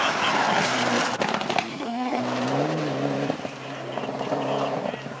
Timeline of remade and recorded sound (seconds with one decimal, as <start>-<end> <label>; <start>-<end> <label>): 0.0-1.7 recorded; 1.7-2.2 remade; 2.2-5.2 recorded

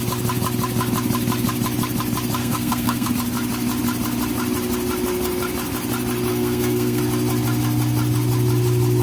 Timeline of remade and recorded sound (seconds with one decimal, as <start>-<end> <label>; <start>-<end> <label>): 0.0-2.4 recorded; 2.4-3.1 remade; 3.1-6.3 recorded; 6.3-7.0 remade; 7.0-9.0 recorded

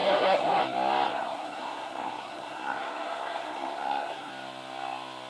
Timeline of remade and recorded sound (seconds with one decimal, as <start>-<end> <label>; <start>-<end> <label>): 0.0-0.6 remade; 0.6-1.1 recorded; 1.1-4.3 remade; 4.3-5.3 recorded

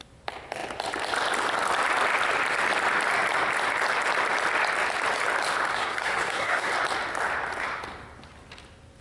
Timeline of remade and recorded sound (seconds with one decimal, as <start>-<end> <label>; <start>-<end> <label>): 0.0-5.7 recorded; 5.7-6.7 remade; 6.7-9.0 recorded